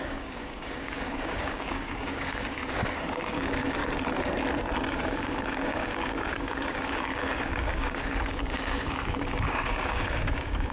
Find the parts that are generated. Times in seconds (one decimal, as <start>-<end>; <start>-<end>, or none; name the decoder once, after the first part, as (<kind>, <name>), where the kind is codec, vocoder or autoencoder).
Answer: 0.0-3.8 (codec, DAC); 4.9-10.7